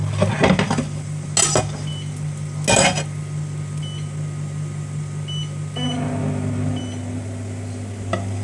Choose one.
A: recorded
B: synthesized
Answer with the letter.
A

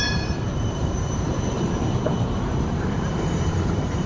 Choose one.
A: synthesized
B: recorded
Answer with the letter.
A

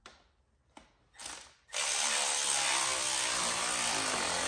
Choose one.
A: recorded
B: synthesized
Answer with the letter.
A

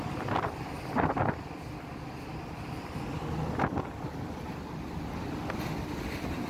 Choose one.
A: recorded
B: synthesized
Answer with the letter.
A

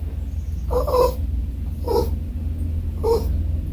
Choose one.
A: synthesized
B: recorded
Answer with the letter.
B